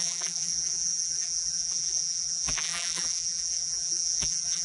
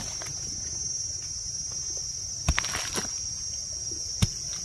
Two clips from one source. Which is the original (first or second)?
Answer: second